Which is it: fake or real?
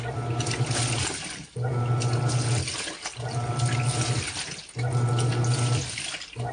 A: real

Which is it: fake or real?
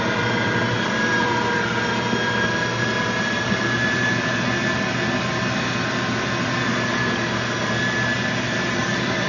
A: real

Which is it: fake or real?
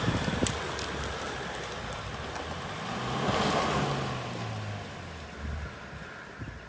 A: real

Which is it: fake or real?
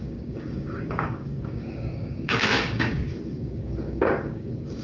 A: fake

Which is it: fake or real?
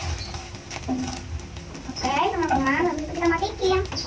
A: real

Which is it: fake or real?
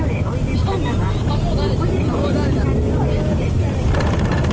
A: real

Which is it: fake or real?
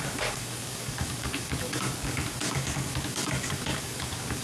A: fake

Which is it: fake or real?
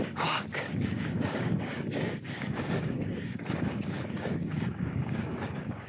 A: fake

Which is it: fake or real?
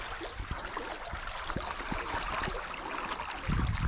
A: real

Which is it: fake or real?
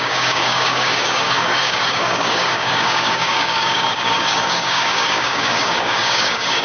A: fake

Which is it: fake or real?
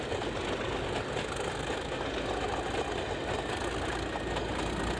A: real